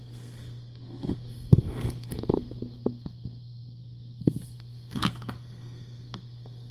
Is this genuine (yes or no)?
no